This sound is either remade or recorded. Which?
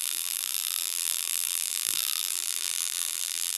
remade